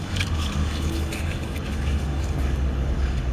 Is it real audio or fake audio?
fake